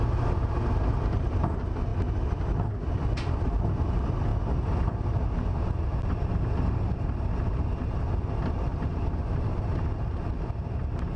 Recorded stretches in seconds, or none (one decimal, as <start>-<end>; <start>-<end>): 0.0-8.7; 9.8-11.2